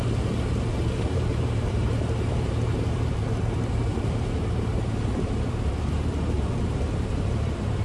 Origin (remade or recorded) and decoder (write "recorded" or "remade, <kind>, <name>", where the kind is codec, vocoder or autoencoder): remade, vocoder, BigVGAN v2